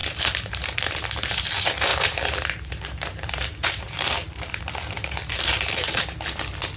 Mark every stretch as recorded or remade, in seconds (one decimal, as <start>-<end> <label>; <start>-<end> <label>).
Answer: 0.0-1.4 remade; 1.4-1.9 recorded; 1.9-6.0 remade; 6.0-6.8 recorded

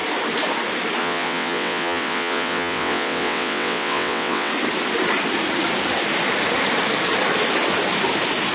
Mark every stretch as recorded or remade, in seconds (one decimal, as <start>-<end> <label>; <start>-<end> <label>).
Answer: 0.0-1.0 recorded; 1.0-4.5 remade; 4.5-8.5 recorded